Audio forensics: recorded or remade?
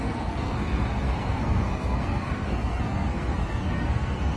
remade